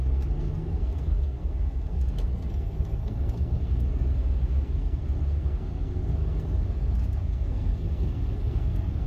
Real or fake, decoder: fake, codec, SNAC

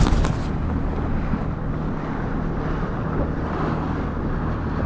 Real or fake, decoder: real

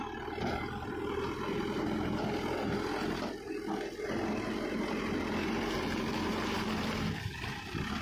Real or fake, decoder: real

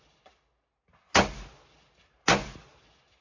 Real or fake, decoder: real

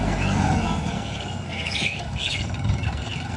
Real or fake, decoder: fake, codec, SNAC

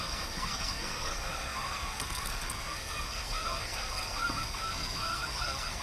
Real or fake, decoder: fake, codec, SNAC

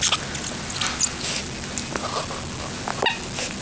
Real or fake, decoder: real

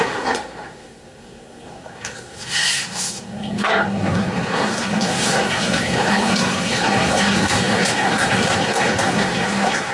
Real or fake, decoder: fake, codec, SNAC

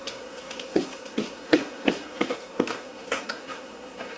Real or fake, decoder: fake, codec, SNAC